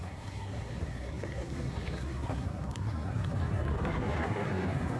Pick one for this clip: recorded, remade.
remade